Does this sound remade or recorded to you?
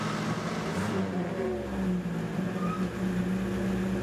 recorded